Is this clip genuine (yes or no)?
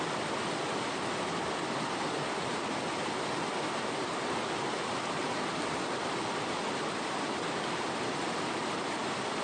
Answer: yes